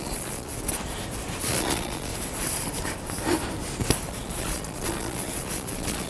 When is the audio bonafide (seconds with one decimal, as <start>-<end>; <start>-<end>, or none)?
0.5-1.4; 2.1-4.1